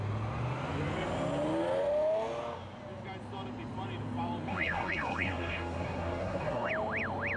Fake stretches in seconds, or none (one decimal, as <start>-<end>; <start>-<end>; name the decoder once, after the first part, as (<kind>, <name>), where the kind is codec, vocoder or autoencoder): 4.5-6.7 (codec, SNAC)